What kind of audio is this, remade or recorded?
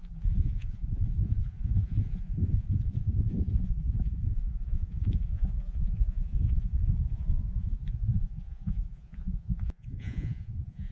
remade